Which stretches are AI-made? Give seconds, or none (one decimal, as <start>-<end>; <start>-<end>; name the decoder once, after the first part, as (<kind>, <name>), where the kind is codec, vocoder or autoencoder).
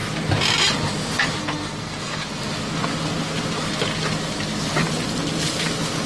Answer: 1.8-2.2 (codec, SNAC)